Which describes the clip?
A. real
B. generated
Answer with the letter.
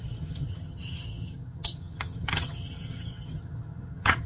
B